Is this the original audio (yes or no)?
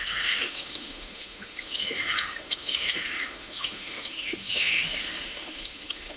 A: no